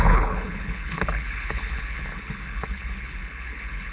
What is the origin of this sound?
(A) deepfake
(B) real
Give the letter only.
A